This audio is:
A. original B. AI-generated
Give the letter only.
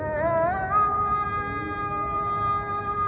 A